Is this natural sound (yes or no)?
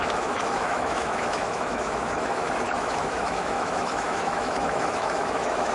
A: no